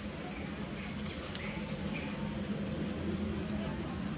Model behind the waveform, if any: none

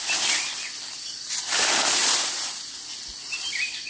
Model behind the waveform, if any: none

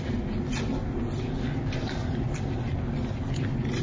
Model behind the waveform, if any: none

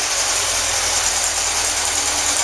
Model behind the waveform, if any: none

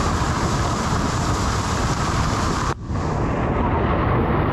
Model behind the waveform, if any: none